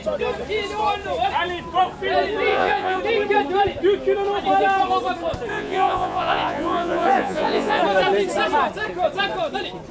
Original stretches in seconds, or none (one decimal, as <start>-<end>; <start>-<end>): 0.0-2.5; 3.0-5.5; 7.8-9.9